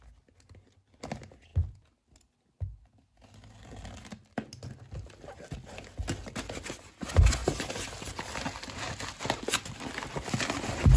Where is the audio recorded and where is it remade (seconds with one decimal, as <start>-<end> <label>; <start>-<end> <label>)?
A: 0.0-11.0 recorded